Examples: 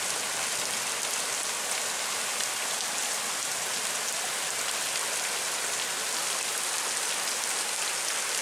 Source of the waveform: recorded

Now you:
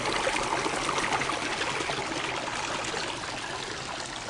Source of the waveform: recorded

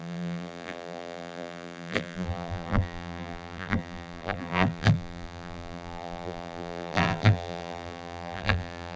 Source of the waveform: remade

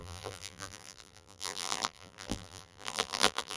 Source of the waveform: remade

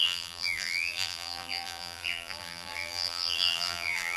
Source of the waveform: remade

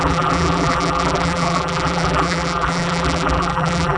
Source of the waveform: remade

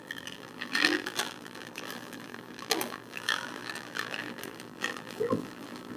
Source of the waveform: remade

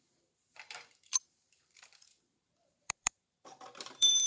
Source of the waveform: remade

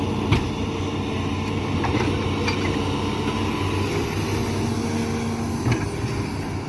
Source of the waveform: recorded